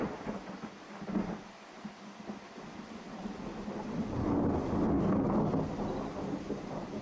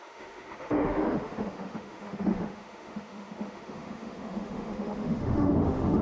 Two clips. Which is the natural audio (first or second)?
first